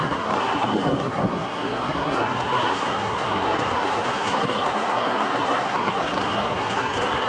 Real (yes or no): no